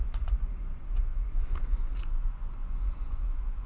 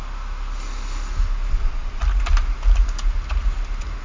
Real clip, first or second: second